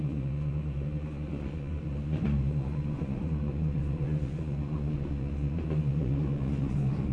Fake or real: fake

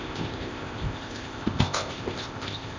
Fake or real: fake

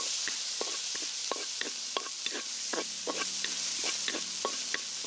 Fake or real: real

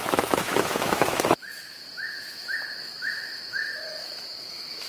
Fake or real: fake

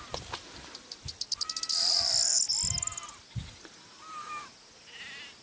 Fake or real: real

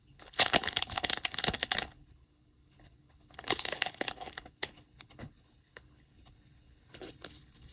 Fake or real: fake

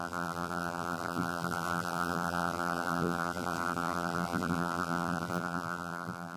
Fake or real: fake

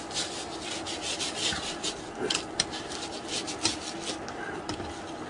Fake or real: real